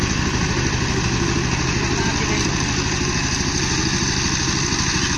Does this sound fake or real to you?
real